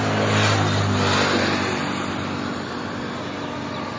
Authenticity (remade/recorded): recorded